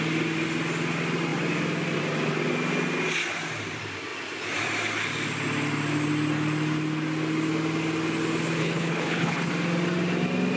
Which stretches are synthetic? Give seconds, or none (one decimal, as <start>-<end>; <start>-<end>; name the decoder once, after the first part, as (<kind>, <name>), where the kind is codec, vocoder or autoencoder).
8.6-9.5 (codec, HILCodec)